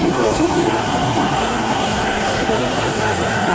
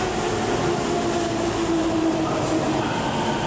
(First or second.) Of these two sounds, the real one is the second